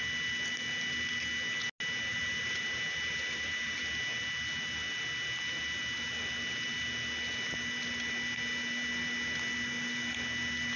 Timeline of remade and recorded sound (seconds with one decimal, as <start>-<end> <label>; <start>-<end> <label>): 0.0-2.1 recorded; 2.1-3.8 remade; 3.8-10.8 recorded